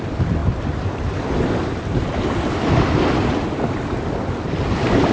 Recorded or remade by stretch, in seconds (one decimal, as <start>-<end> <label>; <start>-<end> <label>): 0.0-5.1 recorded